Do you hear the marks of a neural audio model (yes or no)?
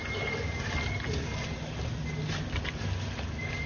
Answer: no